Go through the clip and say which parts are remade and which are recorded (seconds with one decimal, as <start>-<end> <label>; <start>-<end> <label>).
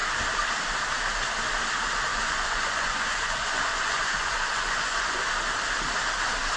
0.0-2.1 recorded; 2.1-5.2 remade; 5.2-6.6 recorded